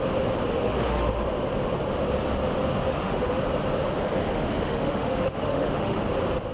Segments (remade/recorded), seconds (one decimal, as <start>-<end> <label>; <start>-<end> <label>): 0.0-0.5 recorded; 0.5-1.2 remade; 1.2-2.9 recorded; 2.9-3.4 remade; 3.4-4.2 recorded; 4.2-6.0 remade; 6.0-6.5 recorded